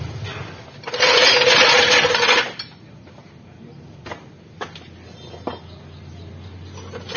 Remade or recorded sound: recorded